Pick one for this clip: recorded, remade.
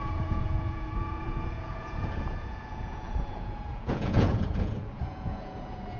remade